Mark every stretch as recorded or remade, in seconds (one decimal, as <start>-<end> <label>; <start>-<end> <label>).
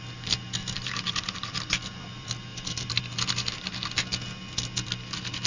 0.0-0.6 recorded; 0.6-1.6 remade; 1.6-2.5 recorded; 2.5-3.0 remade; 3.0-5.5 recorded